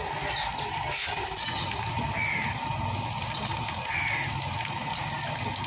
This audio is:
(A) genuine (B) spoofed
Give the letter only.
A